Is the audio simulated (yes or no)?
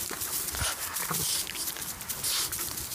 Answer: no